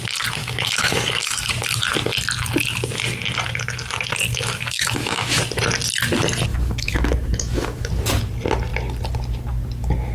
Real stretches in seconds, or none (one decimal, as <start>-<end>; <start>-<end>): 0.0-0.4; 1.5-4.3; 5.4-6.5; 7.9-10.1